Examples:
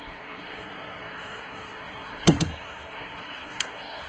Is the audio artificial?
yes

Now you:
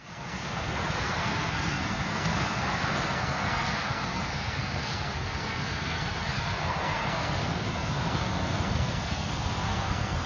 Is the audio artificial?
yes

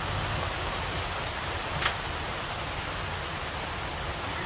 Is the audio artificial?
no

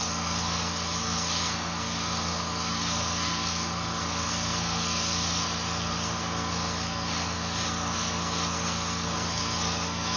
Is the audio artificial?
yes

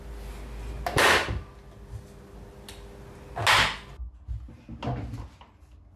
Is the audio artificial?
no